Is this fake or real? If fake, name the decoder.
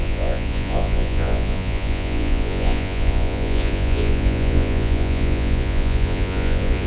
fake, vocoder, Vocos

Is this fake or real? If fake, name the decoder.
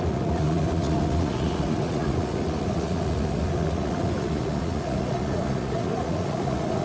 fake, vocoder, Vocos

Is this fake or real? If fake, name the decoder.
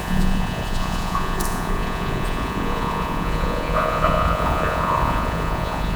fake, vocoder, Vocos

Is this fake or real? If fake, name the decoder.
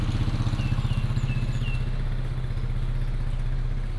real